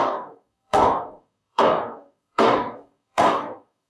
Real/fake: fake